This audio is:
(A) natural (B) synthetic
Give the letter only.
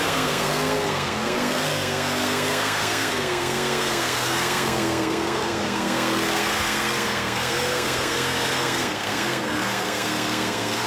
B